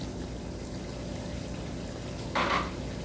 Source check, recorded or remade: recorded